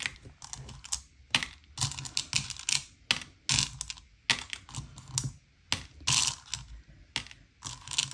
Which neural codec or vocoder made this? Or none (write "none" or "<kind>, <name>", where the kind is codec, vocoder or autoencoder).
none